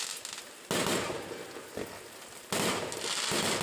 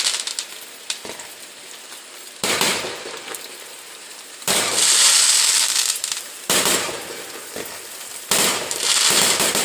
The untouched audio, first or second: first